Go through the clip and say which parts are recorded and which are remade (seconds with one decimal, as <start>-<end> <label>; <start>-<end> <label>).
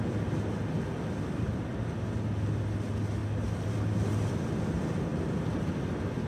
0.0-3.2 recorded; 3.2-4.1 remade; 4.1-6.3 recorded